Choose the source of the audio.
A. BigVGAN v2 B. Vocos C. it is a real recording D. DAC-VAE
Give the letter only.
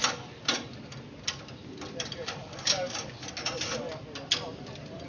C